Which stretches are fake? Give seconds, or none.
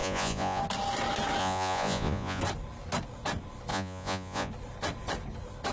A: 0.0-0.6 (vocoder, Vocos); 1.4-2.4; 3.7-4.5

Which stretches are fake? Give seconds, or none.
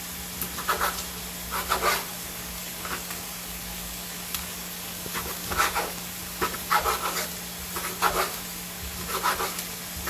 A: 2.1-7.3 (codec, DAC); 8.3-9.1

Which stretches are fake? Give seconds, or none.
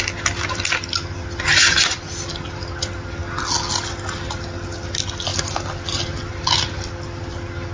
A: none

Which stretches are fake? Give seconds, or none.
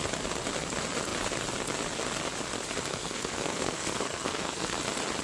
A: 2.9-4.8 (codec, SNAC)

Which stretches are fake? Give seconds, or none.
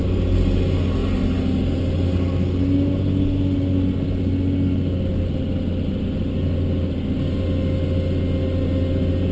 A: none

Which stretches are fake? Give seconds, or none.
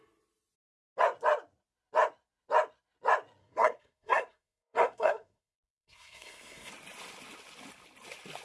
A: 3.4-6.7 (codec, SNAC)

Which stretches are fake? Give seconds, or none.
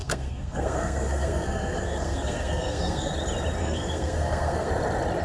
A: 0.0-3.1 (codec, SNAC); 3.6-4.7